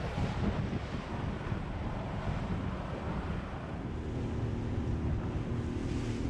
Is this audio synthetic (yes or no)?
no